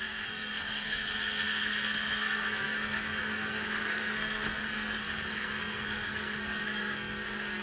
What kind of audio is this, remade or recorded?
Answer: remade